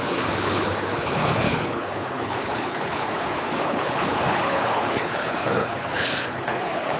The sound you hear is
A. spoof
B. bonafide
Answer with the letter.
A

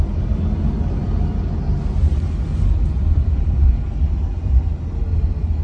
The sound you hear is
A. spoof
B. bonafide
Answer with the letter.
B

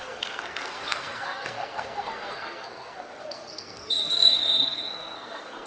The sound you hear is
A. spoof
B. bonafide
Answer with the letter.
A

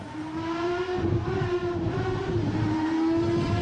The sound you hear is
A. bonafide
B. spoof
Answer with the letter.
A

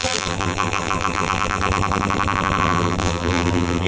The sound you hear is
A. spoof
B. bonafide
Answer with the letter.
A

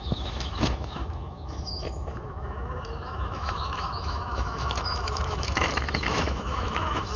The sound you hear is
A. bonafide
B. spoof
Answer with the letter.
B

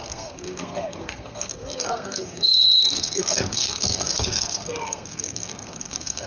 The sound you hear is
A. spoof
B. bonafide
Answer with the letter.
A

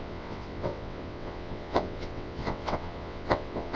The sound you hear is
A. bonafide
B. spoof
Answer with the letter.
B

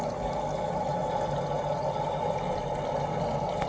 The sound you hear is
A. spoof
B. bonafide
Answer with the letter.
B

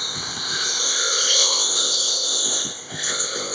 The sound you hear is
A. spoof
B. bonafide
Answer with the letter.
A